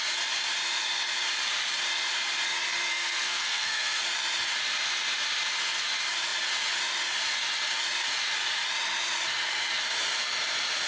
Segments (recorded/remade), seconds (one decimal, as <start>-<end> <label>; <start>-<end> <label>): 0.0-2.9 recorded; 2.9-4.0 remade; 4.0-10.9 recorded